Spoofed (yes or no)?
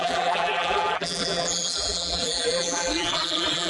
yes